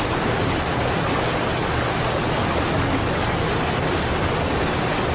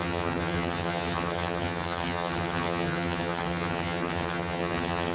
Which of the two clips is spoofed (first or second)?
second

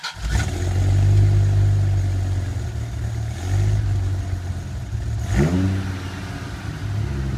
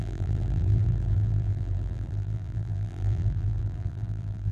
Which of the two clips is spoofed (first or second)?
second